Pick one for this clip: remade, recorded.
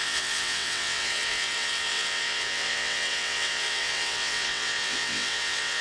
remade